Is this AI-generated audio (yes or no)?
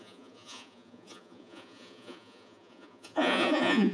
yes